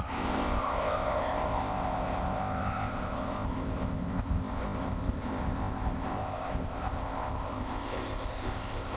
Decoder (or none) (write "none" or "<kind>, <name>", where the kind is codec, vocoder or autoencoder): codec, ZipCodec